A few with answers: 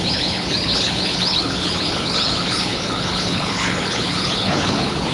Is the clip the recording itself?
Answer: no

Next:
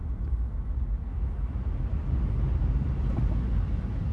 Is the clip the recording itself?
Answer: yes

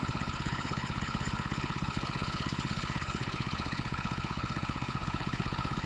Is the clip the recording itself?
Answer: no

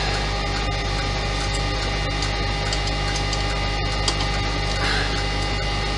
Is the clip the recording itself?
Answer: yes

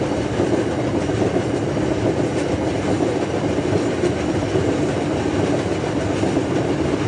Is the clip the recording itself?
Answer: yes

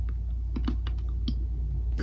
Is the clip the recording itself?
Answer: yes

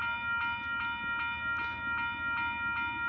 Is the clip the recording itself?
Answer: yes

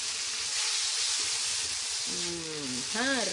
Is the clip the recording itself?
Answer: yes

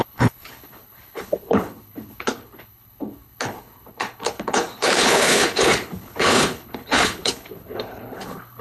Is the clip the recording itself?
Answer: no